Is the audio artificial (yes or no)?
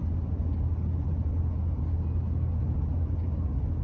no